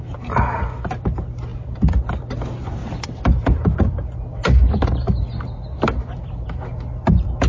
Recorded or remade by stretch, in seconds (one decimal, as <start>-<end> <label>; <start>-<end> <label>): 0.0-7.5 recorded